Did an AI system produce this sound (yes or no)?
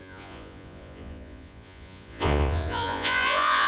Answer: yes